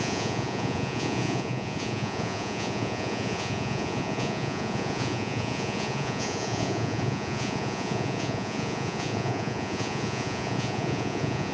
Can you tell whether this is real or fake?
fake